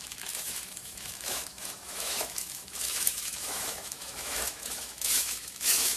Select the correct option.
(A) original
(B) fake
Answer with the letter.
B